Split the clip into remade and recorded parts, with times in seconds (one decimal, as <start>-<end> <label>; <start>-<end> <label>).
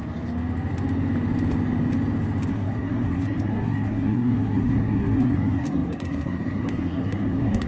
0.0-2.5 recorded; 2.5-7.7 remade